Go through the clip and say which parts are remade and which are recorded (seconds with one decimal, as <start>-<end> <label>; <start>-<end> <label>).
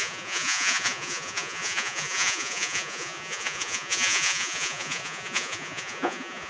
0.0-6.5 remade